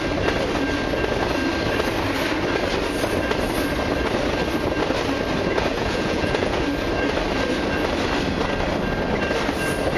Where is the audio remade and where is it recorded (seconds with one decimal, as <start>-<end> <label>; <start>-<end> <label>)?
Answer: 0.0-5.7 recorded; 5.7-6.6 remade; 6.6-10.0 recorded